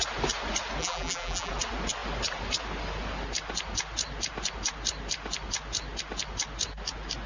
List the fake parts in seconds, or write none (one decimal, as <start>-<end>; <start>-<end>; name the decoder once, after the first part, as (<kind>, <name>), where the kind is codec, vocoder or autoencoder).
0.8-1.5 (vocoder, BigVGAN v2)